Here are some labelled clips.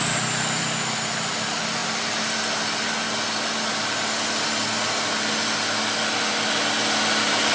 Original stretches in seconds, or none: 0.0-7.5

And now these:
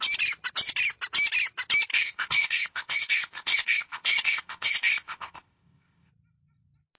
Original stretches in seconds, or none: 0.0-1.9; 6.1-7.0

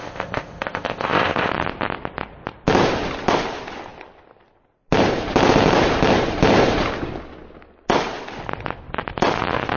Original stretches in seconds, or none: 1.5-9.8

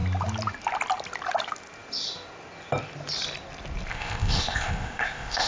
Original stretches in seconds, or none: 0.0-3.9

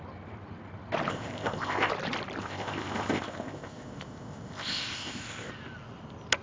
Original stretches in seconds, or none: 0.0-1.1; 1.9-2.4; 5.5-6.4

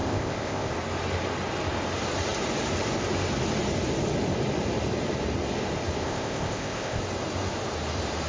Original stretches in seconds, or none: 0.7-6.0; 7.0-8.3